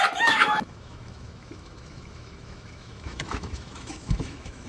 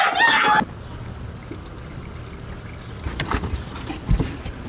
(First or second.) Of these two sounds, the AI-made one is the first